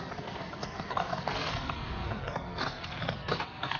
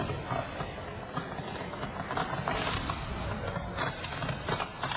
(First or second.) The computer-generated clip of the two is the first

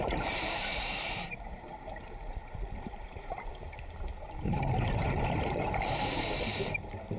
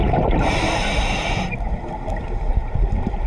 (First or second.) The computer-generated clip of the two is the first